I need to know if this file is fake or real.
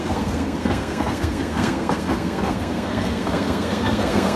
fake